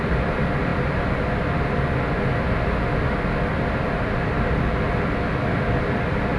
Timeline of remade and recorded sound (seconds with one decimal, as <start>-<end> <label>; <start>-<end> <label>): 0.0-6.4 recorded